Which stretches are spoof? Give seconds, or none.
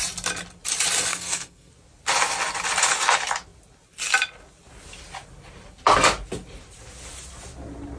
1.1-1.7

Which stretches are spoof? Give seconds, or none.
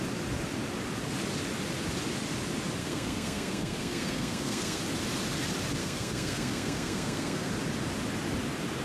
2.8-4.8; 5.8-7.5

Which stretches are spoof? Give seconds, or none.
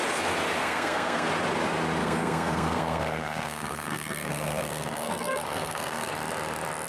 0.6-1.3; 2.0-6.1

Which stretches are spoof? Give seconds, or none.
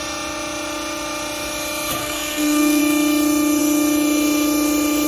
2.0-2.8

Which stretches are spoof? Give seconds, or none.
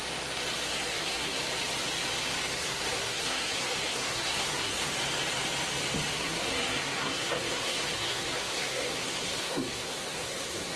0.7-1.4; 2.6-4.9; 6.1-10.8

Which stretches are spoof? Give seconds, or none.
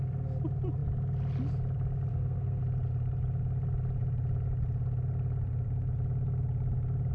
2.1-2.6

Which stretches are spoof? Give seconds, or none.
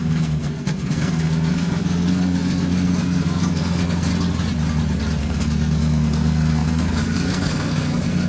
0.0-4.1; 5.2-8.3